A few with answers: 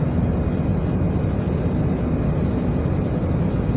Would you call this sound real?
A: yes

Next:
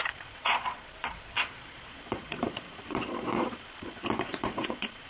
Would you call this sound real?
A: no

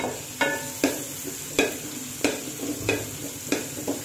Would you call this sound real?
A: yes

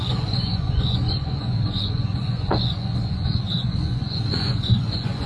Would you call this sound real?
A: no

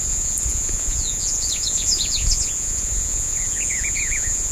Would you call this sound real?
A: no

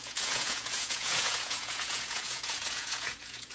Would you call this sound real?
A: no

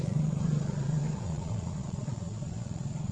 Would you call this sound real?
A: no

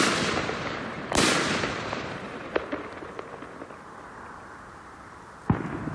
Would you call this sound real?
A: yes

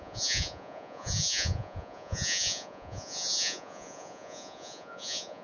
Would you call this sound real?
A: no